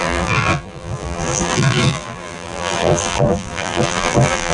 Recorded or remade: remade